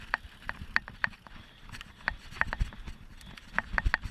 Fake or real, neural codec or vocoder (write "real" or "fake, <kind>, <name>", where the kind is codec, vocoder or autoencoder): real